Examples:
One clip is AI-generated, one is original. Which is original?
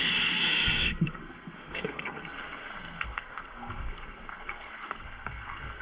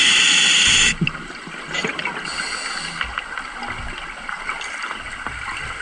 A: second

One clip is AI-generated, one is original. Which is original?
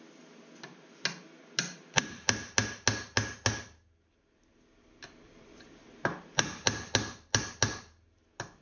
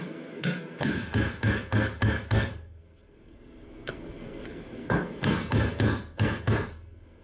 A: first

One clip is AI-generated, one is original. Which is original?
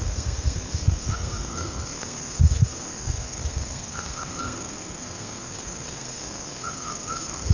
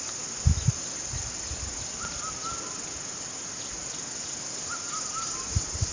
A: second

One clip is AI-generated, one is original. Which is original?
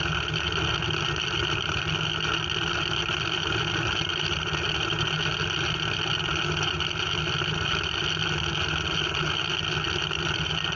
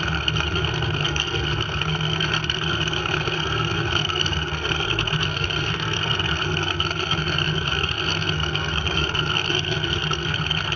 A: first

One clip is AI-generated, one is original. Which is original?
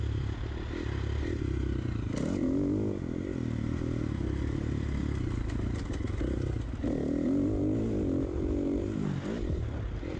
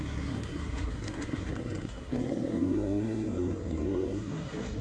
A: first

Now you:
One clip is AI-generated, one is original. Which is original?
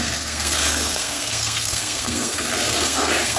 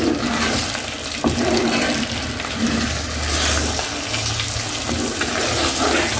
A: second